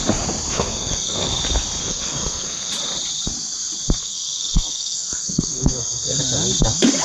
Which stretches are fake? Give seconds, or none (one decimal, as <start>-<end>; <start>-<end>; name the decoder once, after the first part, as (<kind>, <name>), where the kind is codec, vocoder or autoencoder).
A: 0.5-1.3 (codec, SNAC); 1.8-2.7; 4.0-6.2